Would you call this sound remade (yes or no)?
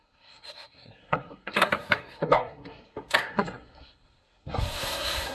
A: yes